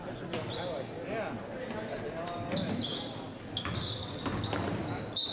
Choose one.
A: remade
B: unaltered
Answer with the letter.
B